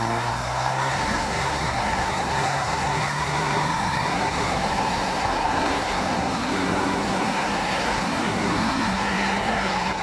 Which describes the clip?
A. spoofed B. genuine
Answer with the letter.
A